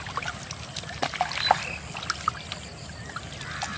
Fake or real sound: real